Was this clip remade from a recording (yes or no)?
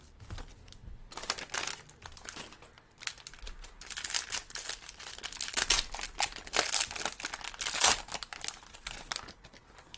no